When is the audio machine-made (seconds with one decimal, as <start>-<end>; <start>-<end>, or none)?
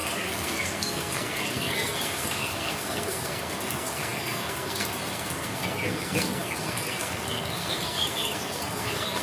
0.0-9.2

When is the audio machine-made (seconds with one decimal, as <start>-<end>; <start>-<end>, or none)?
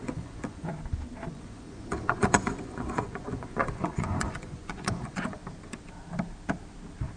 0.0-0.7; 1.3-5.4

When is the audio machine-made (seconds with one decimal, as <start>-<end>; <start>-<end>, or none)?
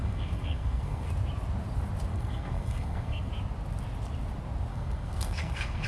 0.0-1.1; 2.1-3.3; 4.7-5.9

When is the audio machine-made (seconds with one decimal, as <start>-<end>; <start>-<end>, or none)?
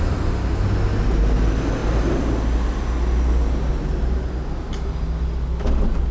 none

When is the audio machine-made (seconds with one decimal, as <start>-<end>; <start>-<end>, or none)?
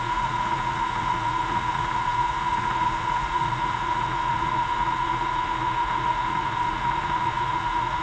0.0-8.0